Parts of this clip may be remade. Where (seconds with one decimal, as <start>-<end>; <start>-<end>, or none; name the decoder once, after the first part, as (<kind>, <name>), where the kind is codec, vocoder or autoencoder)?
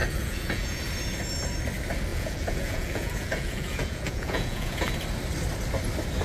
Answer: 0.0-0.8 (vocoder, Vocos); 2.1-4.9